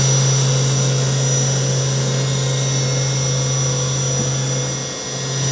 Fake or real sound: real